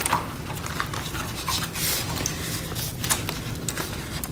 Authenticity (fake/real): real